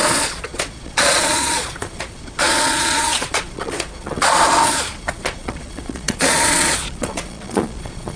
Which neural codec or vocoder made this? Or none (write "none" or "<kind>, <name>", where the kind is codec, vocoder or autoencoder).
vocoder, Vocos